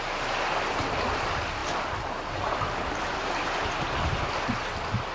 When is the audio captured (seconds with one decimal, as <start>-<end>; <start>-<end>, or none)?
0.0-5.1